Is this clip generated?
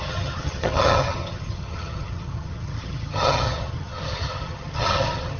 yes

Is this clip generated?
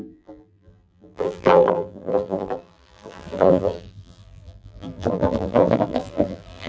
yes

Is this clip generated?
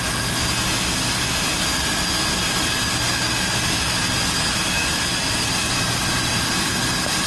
no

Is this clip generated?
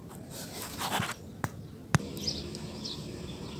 no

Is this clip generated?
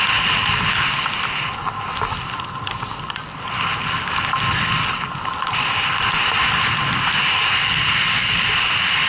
no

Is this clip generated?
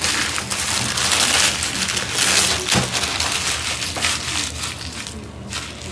no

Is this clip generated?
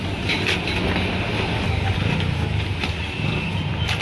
no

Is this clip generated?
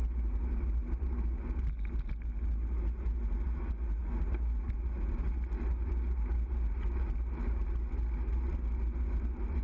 no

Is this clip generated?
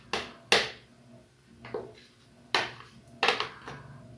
no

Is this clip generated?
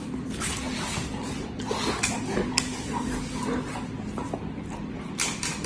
no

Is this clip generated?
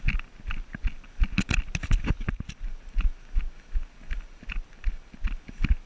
no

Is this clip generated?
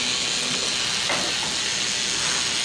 no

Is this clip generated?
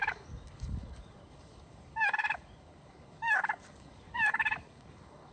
yes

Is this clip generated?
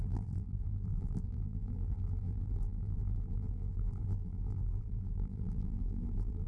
yes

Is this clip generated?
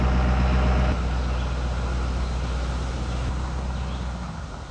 no